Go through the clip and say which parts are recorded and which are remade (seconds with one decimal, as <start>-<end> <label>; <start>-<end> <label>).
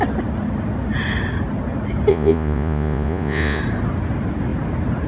0.0-2.1 recorded; 2.1-3.6 remade; 3.6-5.1 recorded